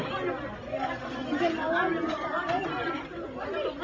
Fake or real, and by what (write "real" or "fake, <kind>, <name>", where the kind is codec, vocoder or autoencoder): real